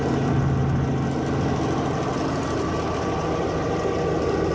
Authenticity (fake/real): real